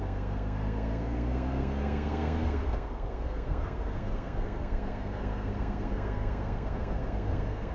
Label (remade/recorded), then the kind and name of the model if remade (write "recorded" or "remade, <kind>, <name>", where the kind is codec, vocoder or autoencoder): remade, codec, SNAC